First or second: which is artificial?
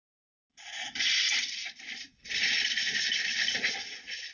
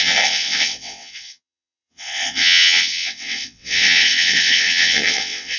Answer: second